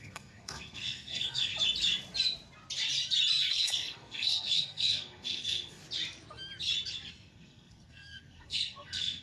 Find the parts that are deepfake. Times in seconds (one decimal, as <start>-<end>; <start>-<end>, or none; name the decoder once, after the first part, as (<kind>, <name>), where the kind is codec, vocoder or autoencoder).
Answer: 0.0-1.5 (codec, SNAC); 3.5-5.8; 7.1-9.2